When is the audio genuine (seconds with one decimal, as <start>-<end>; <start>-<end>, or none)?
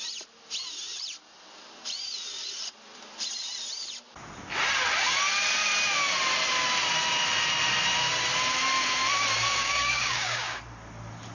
0.0-9.6; 10.6-11.3